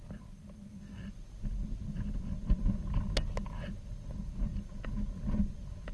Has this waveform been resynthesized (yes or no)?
no